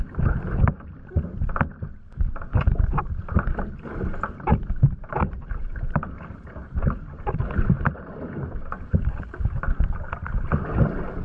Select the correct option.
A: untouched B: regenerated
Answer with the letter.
A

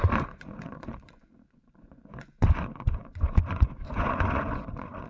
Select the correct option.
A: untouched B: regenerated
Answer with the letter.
B